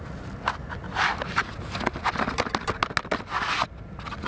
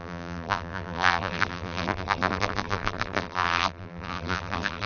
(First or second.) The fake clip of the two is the second